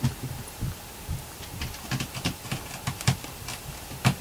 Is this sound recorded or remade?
recorded